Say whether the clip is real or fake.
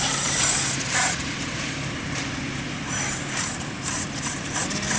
fake